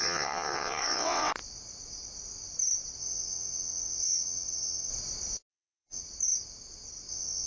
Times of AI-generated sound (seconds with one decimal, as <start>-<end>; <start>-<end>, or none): 0.0-1.3; 3.0-4.9; 5.5-6.0; 7.1-7.5